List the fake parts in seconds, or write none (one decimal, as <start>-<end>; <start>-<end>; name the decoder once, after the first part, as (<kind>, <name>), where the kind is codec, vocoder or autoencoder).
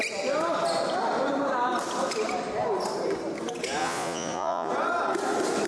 3.8-4.7 (vocoder, Vocos)